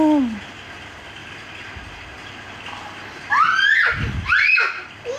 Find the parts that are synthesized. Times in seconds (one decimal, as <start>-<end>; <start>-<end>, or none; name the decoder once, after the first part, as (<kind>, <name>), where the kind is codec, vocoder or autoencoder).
1.2-2.3 (vocoder, BigVGAN v2)